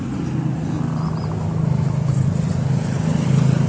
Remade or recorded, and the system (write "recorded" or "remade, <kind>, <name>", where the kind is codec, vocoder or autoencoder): recorded